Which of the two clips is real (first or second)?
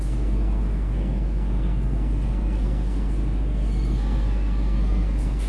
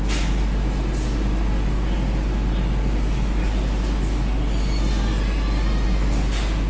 second